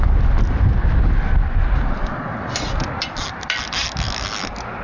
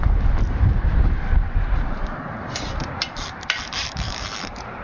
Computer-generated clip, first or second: second